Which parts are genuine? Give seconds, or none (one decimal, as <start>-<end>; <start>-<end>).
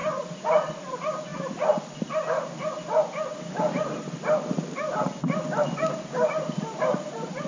0.0-7.5